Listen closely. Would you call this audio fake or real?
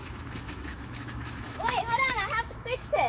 fake